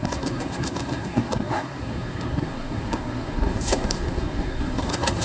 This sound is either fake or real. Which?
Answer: fake